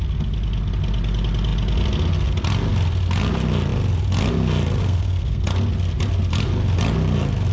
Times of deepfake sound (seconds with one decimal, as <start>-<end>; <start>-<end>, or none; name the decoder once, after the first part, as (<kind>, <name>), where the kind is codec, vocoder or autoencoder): 4.8-5.4 (codec, SNAC)